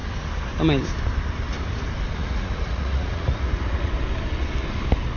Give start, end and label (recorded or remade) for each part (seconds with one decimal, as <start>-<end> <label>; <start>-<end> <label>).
0.0-2.2 recorded; 2.2-3.9 remade; 3.9-5.2 recorded